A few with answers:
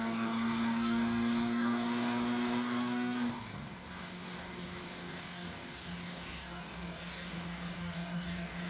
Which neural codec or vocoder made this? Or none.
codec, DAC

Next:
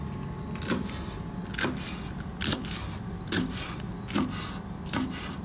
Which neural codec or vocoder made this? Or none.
none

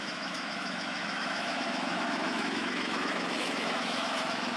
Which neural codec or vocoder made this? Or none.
autoencoder, DAC-VAE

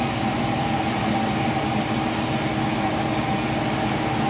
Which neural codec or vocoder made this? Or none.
none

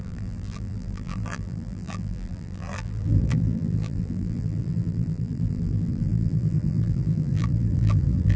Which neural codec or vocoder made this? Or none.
vocoder, BigVGAN v2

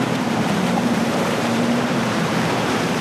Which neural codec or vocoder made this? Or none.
vocoder, BigVGAN v2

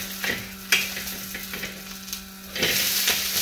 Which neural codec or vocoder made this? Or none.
none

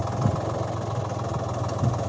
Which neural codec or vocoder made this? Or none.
none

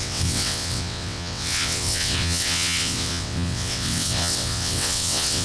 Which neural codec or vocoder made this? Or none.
vocoder, WaveNeXt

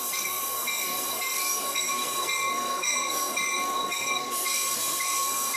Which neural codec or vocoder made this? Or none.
codec, SNAC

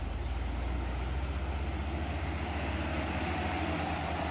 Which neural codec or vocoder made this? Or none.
none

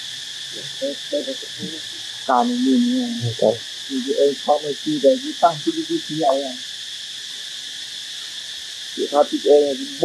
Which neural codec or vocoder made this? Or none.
none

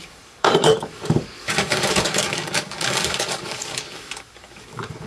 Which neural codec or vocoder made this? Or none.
codec, DAC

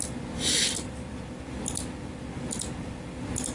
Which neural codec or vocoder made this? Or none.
none